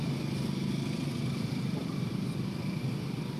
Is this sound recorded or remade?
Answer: recorded